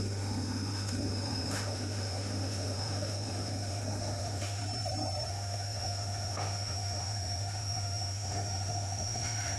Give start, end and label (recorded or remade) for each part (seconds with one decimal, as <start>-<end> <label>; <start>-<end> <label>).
0.0-4.6 remade; 4.6-5.3 recorded; 5.3-9.6 remade